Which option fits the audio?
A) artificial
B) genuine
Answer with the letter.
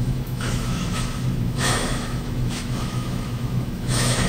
A